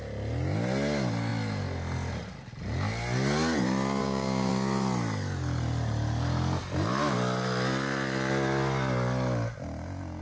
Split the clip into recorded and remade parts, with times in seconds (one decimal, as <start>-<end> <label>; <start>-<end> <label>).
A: 0.0-4.0 recorded; 4.0-4.5 remade; 4.5-10.2 recorded